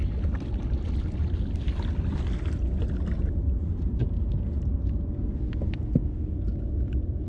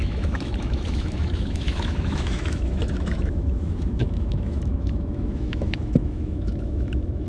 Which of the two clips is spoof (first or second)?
second